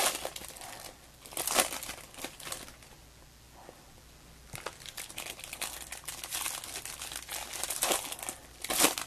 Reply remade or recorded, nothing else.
recorded